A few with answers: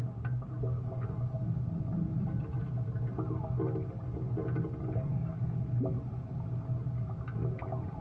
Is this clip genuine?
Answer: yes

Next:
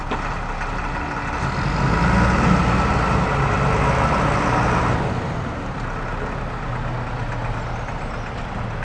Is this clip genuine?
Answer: yes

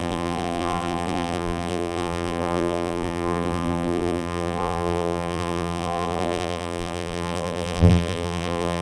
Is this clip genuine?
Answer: no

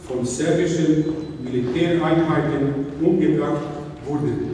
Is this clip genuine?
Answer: yes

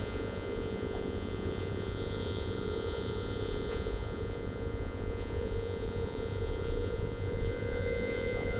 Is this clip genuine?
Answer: no